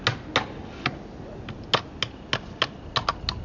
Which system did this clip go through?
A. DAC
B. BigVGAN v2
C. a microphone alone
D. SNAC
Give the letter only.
C